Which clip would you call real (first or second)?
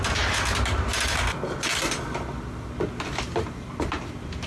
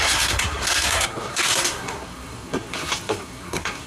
first